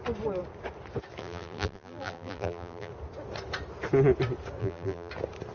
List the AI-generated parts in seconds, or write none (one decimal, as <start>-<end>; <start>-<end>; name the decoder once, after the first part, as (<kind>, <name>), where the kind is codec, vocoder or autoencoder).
1.2-2.9 (vocoder, BigVGAN v2); 4.6-5.1